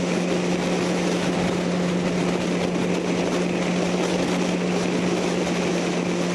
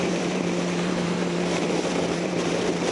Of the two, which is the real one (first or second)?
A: first